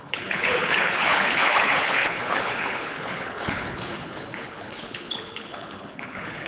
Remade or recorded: remade